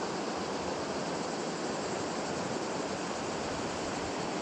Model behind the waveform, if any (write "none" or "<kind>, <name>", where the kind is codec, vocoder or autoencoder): none